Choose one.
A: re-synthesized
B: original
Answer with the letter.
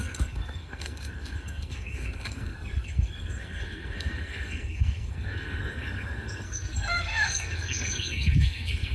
A